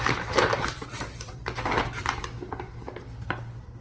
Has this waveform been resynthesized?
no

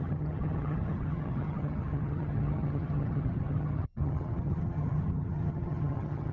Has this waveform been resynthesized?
yes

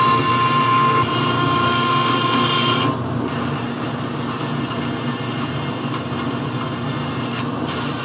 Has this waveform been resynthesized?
no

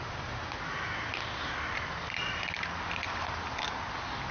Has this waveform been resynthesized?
no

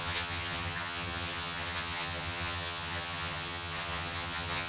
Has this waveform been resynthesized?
yes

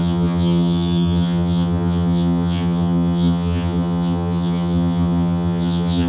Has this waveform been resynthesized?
yes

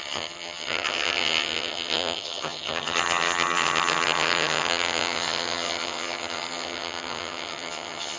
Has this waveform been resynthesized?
yes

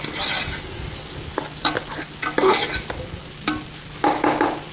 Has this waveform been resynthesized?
no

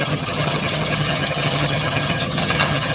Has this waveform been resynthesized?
yes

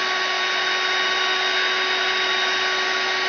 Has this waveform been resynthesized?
no